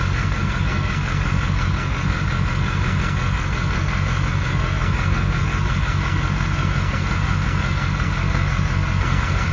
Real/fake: fake